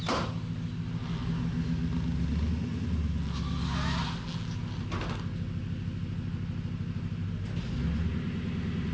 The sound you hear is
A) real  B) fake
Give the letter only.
A